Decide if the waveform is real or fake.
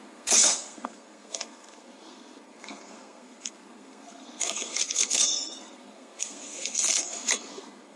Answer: fake